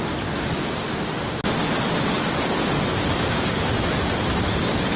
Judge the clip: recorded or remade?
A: recorded